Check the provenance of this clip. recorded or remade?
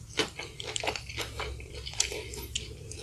recorded